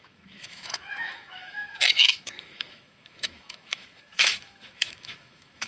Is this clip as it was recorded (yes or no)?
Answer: no